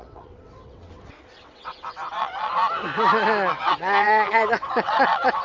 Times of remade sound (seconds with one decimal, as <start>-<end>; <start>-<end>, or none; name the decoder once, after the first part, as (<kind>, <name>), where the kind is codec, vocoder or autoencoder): 0.0-2.6 (vocoder, WaveNeXt); 3.5-5.4